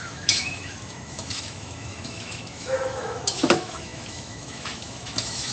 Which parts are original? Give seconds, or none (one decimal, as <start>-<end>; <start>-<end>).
none